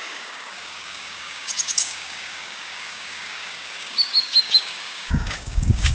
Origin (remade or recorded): remade